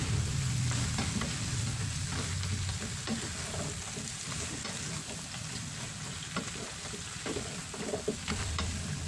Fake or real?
real